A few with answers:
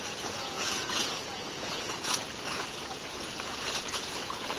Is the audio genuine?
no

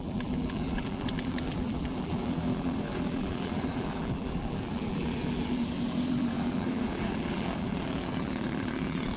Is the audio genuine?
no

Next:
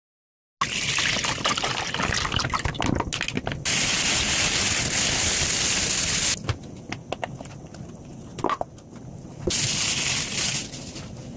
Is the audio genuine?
yes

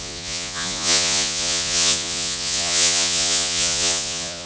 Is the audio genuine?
no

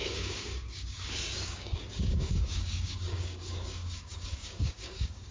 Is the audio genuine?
no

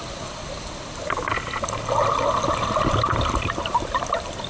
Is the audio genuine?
yes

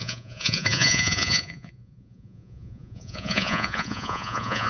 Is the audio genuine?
no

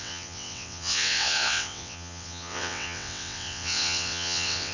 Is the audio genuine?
no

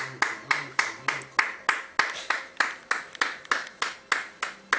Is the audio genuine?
yes